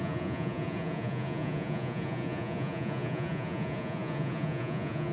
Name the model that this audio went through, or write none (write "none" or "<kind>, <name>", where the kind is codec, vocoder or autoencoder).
vocoder, Vocos